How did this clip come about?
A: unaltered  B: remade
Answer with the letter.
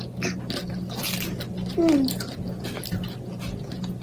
A